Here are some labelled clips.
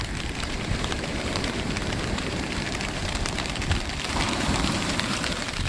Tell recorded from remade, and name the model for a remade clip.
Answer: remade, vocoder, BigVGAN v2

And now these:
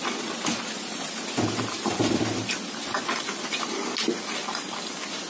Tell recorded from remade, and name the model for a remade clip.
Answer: recorded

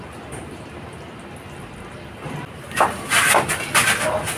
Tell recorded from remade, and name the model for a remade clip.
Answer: recorded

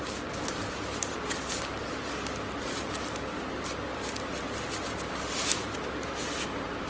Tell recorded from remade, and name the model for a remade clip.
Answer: recorded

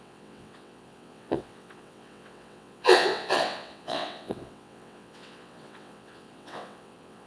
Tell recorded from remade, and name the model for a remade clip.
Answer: remade, vocoder, WaveNeXt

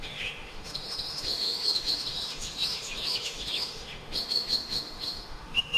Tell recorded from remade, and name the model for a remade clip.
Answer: remade, autoencoder, DAC-VAE